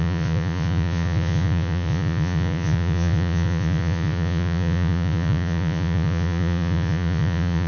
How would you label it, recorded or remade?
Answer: remade